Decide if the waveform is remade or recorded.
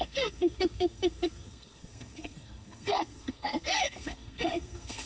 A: remade